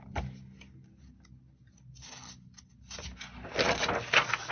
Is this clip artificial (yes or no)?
no